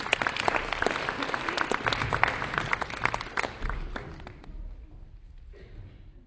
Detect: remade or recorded recorded